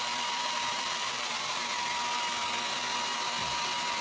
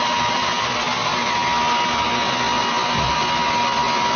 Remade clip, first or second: first